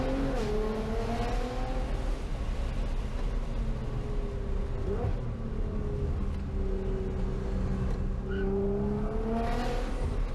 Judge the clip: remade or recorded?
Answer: recorded